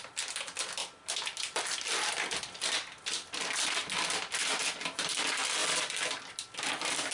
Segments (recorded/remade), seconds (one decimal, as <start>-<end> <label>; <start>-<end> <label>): 0.0-7.1 recorded